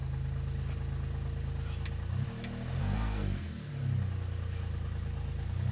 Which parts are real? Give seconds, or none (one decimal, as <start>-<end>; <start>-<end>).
0.0-2.8; 3.7-5.7